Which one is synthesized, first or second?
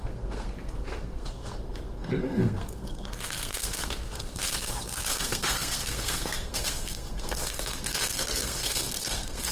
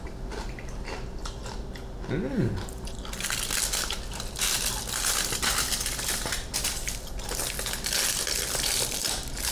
first